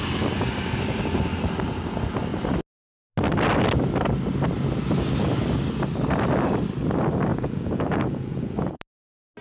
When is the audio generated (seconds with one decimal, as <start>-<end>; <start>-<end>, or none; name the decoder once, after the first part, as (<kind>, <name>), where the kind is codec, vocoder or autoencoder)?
7.3-8.8 (vocoder, Vocos)